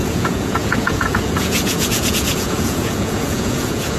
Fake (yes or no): yes